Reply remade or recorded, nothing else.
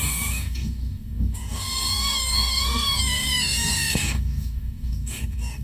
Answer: remade